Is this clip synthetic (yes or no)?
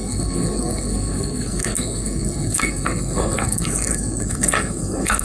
yes